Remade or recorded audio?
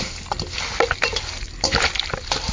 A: recorded